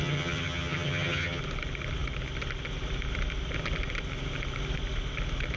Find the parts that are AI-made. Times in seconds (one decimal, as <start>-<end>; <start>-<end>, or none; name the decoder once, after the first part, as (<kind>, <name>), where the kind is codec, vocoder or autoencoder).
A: 0.0-1.4 (vocoder, HiFi-GAN)